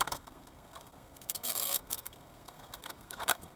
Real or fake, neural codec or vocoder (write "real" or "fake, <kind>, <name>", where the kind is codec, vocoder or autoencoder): fake, codec, SNAC